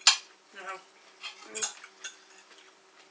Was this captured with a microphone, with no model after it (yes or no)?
yes